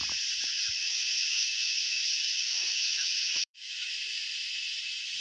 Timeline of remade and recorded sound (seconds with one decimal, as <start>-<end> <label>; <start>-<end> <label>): 0.0-0.8 recorded; 0.8-3.9 remade; 3.9-5.2 recorded